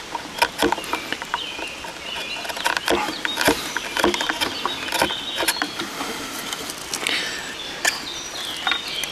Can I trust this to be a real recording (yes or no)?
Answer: yes